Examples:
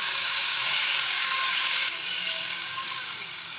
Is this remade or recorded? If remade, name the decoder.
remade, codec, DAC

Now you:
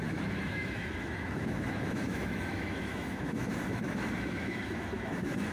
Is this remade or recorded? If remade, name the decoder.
remade, autoencoder, DAC-VAE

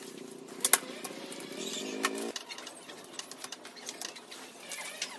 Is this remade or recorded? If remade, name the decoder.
recorded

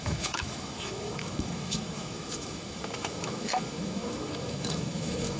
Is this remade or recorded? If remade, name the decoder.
remade, autoencoder, DAC-VAE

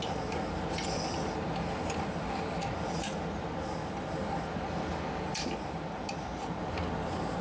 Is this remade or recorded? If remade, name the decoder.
recorded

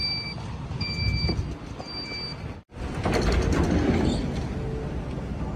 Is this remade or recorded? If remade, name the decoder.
recorded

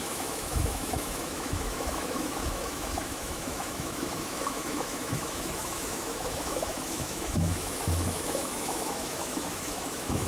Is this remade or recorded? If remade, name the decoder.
remade, autoencoder, DAC-VAE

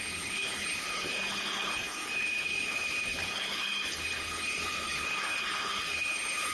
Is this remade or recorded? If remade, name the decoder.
remade, codec, HILCodec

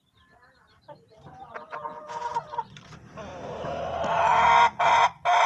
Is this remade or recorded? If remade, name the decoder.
recorded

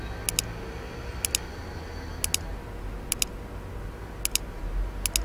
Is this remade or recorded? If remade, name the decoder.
recorded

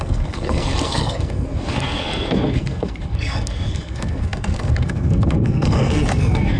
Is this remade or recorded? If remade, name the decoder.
remade, codec, SNAC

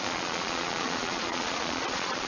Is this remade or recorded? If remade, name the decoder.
remade, vocoder, Vocos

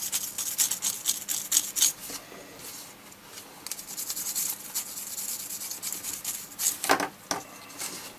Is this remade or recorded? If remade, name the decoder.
recorded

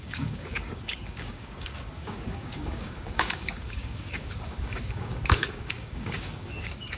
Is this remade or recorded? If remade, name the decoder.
remade, codec, DAC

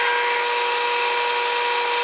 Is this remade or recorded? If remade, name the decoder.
recorded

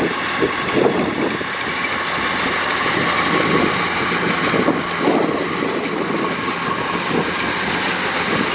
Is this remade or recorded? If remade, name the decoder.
recorded